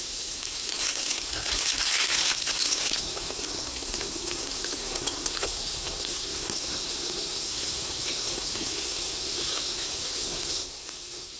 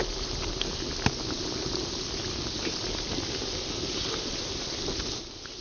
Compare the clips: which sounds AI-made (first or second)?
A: first